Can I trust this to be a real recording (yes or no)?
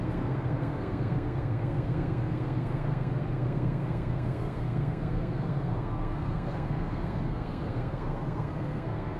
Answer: no